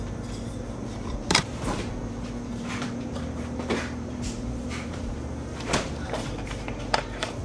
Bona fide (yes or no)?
no